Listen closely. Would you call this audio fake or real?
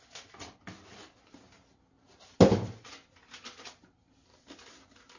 real